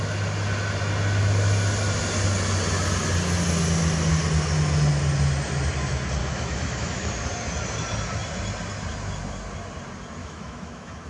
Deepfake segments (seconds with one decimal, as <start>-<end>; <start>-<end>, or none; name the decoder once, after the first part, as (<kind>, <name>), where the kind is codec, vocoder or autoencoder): 6.2-7.1 (autoencoder, DAC-VAE); 10.2-11.1